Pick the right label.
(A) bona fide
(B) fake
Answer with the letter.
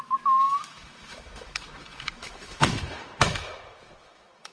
B